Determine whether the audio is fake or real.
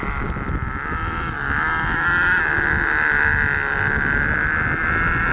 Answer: real